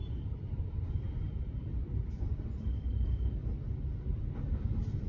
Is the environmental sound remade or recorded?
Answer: recorded